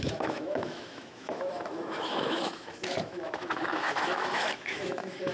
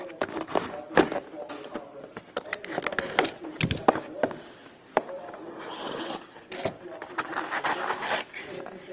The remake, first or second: first